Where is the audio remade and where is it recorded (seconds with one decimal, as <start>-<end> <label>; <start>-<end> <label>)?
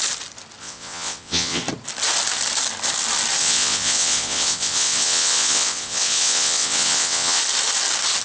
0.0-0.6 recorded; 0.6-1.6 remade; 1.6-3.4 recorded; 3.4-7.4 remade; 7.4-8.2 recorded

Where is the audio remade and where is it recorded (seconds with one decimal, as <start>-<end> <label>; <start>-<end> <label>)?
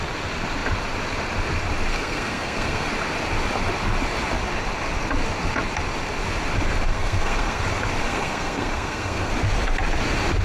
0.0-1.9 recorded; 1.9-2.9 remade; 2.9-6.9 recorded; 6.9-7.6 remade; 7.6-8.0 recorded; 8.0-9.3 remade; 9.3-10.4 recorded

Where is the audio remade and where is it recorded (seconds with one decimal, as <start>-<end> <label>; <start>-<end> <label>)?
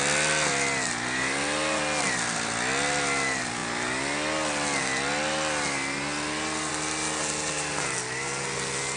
0.0-9.0 recorded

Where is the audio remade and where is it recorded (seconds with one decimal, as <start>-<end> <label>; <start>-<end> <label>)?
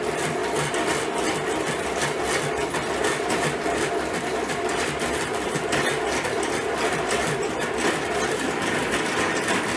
0.0-0.4 remade; 0.4-1.5 recorded; 1.5-2.0 remade; 2.0-5.5 recorded; 5.5-7.6 remade; 7.6-8.8 recorded; 8.8-9.8 remade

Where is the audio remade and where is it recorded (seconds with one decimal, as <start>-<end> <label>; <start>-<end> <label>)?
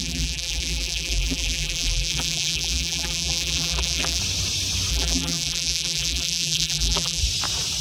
0.0-4.2 remade; 4.2-4.9 recorded; 4.9-7.2 remade; 7.2-7.8 recorded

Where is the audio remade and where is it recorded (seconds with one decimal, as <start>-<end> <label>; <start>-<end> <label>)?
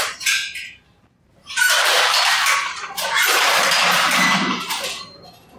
0.0-5.6 remade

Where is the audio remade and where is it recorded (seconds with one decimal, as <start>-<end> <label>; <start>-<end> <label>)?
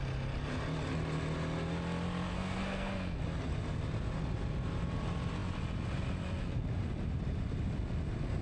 0.0-2.3 recorded; 2.3-3.2 remade; 3.2-8.4 recorded